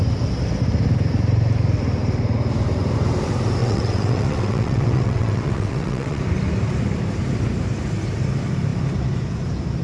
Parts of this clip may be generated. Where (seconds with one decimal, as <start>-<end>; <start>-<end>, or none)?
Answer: 3.6-6.2